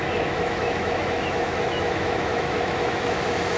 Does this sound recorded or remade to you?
remade